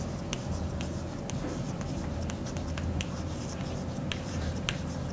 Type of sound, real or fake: real